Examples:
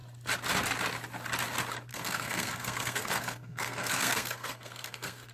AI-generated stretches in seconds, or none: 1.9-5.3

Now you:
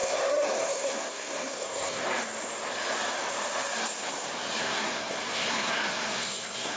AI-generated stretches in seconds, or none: 0.0-2.0; 4.6-6.8

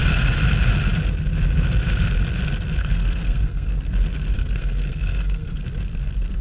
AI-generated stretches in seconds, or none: 2.8-3.8; 4.3-5.6